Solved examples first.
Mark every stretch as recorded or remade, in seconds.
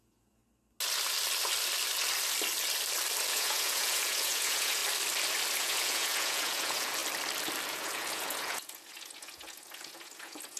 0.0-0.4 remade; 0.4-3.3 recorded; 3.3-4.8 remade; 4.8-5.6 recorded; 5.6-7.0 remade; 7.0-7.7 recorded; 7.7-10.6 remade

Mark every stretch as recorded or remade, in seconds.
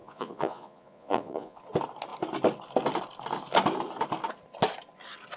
0.0-1.6 remade; 1.6-5.4 recorded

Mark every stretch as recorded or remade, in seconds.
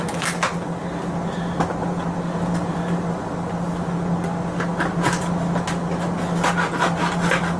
0.0-7.6 recorded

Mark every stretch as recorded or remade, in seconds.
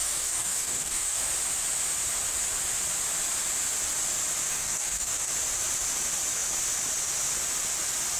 0.0-1.2 remade; 1.2-4.5 recorded; 4.5-5.3 remade; 5.3-8.2 recorded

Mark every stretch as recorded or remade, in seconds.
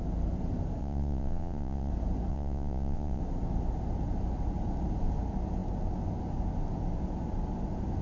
0.0-0.8 recorded; 0.8-1.9 remade; 1.9-2.3 recorded; 2.3-3.2 remade; 3.2-8.0 recorded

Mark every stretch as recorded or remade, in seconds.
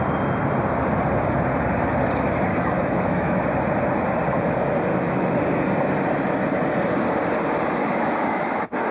0.0-2.5 recorded; 2.5-3.4 remade; 3.4-4.9 recorded; 4.9-5.4 remade; 5.4-7.8 recorded; 7.8-8.9 remade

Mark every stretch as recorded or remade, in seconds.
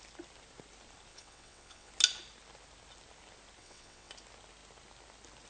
0.0-1.1 recorded; 1.1-1.9 remade; 1.9-3.6 recorded; 3.6-4.1 remade; 4.1-5.5 recorded